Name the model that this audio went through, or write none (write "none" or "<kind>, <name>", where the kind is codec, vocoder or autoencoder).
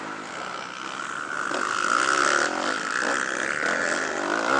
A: none